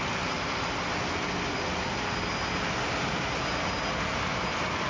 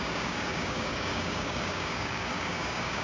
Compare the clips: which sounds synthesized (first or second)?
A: second